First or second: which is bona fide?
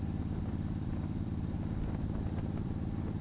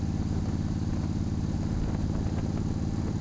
second